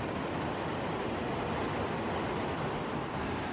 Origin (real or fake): real